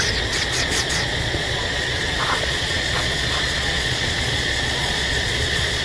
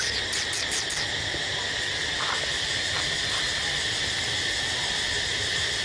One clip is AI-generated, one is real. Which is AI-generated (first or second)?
first